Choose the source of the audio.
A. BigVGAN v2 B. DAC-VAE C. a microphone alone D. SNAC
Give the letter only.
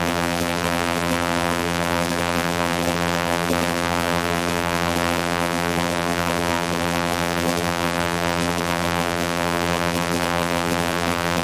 A